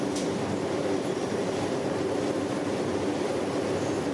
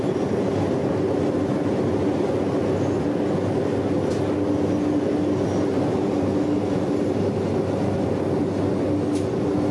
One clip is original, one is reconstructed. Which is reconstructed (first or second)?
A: first